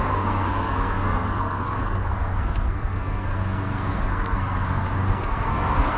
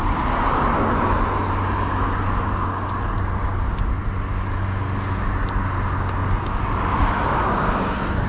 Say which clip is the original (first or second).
second